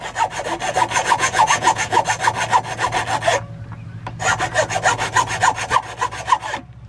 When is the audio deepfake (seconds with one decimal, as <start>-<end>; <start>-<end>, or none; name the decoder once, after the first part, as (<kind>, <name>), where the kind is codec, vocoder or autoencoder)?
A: 1.0-2.0 (vocoder, Vocos)